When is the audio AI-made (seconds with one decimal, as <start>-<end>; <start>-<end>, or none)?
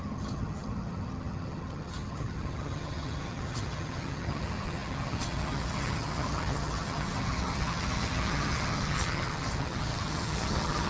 0.0-10.9